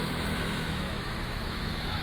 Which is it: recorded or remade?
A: remade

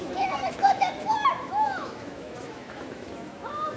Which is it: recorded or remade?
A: remade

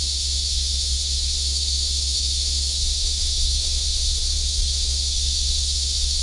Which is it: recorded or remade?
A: remade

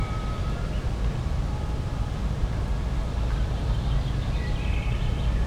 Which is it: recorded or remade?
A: recorded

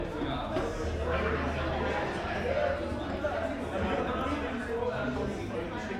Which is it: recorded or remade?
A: recorded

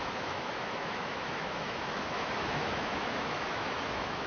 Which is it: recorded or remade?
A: remade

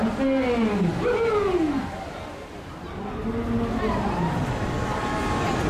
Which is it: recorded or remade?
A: recorded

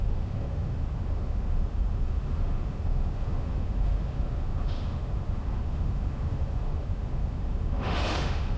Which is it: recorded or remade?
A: remade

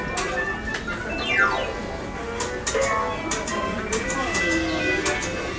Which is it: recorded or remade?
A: recorded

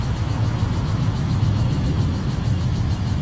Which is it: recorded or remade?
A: remade